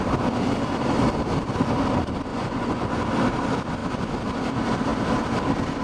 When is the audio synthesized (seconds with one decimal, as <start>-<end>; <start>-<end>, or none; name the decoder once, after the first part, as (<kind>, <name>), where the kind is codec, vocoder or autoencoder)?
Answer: 2.3-2.9 (vocoder, Vocos)